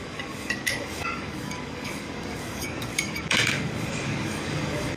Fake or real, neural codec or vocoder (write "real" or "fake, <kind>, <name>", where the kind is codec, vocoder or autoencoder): fake, codec, DAC